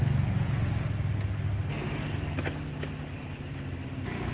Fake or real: real